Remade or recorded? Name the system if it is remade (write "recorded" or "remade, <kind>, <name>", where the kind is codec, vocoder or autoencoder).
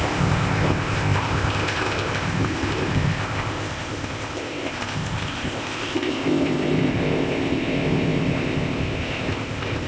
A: remade, codec, ZipCodec